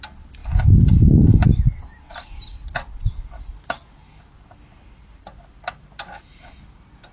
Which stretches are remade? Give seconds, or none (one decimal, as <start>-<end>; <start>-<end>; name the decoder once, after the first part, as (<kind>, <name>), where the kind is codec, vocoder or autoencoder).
none